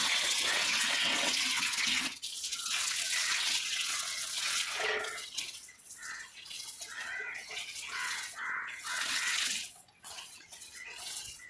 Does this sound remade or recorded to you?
remade